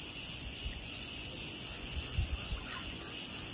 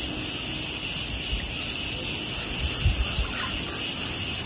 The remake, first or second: first